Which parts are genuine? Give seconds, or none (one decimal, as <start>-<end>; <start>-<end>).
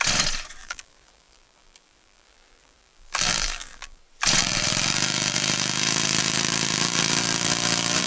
0.0-0.6; 4.0-4.4